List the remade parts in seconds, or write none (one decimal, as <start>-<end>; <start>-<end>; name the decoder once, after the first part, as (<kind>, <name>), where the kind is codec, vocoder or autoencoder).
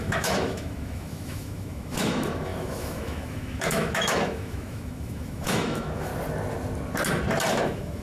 0.0-6.1 (autoencoder, DAC-VAE); 7.5-8.0